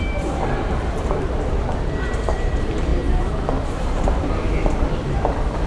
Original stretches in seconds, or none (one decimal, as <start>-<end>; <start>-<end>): 2.9-5.7